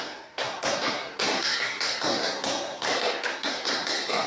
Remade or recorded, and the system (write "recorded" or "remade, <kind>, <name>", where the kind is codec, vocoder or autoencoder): remade, codec, SNAC